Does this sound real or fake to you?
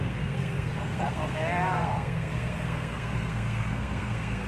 fake